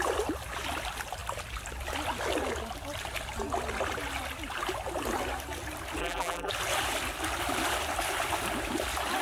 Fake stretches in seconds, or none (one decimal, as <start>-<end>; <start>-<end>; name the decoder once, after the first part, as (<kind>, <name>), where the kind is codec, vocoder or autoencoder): 6.0-6.5 (vocoder, BigVGAN v2)